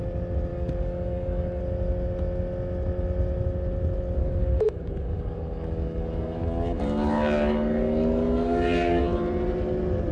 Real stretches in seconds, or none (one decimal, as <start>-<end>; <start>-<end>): 0.0-0.5; 1.6-4.2; 9.0-10.1